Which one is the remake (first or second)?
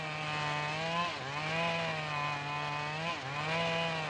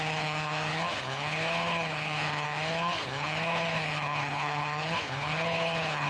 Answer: second